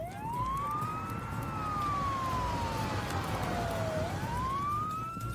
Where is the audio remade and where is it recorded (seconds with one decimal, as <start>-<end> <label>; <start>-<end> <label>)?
0.0-0.9 remade; 0.9-4.1 recorded; 4.1-5.3 remade